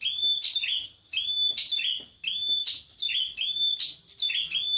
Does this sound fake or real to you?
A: real